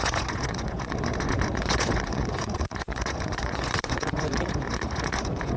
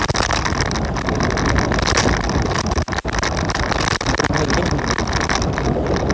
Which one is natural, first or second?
second